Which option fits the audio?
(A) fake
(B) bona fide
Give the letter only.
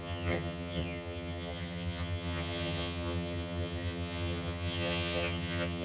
A